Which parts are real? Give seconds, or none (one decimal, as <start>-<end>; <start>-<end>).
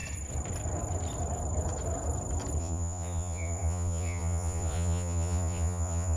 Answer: 0.0-2.6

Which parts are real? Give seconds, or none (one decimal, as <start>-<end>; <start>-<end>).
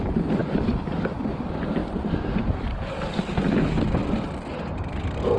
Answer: 0.0-4.0; 4.5-5.4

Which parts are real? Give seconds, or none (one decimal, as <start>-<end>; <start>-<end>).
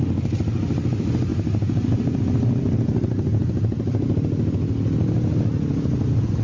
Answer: 0.0-1.3; 2.2-6.4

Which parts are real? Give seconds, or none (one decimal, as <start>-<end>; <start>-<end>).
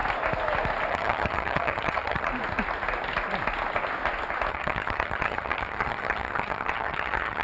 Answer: 0.0-0.9; 2.3-4.5